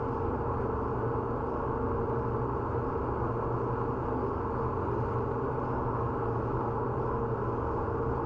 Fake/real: real